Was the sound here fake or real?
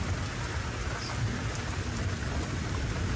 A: real